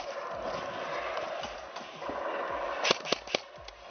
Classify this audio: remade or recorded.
recorded